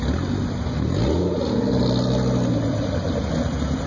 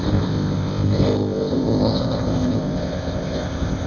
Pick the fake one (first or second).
second